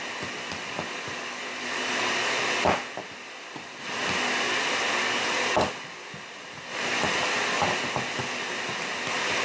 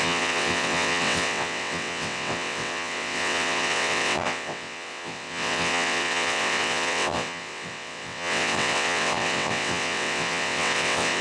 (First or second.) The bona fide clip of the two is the first